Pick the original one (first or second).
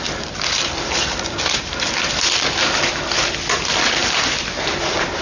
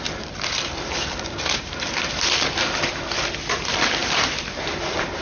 first